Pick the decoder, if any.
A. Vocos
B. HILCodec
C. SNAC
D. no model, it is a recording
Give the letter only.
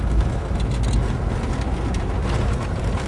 D